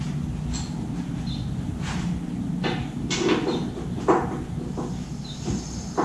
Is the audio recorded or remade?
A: recorded